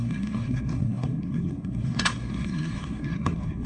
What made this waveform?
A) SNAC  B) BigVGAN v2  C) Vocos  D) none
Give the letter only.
A